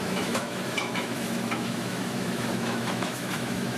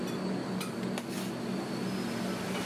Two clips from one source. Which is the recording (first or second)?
second